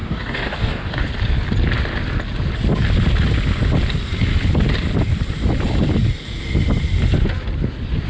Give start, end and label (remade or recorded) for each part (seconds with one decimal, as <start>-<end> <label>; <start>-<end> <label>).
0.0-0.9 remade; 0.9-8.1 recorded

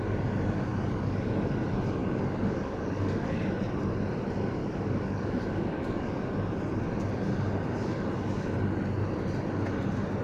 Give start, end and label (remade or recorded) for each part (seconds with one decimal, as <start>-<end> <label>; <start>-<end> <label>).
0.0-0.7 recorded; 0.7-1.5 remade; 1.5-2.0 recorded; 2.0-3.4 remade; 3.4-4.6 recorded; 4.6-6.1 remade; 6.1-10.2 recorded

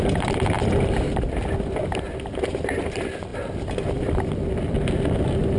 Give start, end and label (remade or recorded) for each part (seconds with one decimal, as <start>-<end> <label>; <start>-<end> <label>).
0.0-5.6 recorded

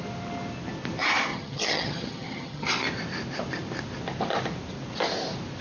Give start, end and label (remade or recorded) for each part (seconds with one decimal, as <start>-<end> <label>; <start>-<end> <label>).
0.0-1.3 recorded; 1.3-2.7 remade; 2.7-5.6 recorded

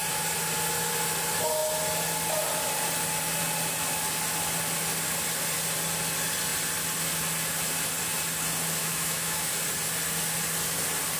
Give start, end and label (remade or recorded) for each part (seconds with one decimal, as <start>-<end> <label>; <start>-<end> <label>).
0.0-8.8 recorded; 8.8-9.5 remade; 9.5-11.2 recorded